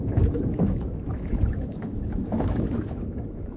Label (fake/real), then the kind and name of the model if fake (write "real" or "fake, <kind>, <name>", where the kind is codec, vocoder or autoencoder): fake, autoencoder, DAC-VAE